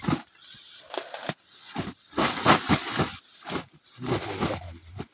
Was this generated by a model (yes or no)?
no